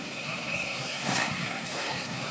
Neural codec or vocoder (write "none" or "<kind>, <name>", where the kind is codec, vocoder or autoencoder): codec, SNAC